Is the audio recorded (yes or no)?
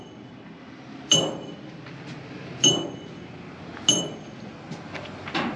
yes